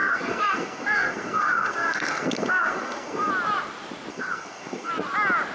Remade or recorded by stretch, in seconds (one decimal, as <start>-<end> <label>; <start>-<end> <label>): 0.0-3.3 remade; 3.3-4.1 recorded; 4.1-4.9 remade; 4.9-5.5 recorded